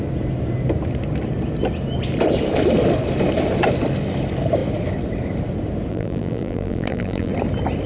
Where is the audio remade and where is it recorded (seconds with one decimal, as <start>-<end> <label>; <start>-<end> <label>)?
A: 0.0-5.9 recorded; 5.9-7.3 remade; 7.3-7.9 recorded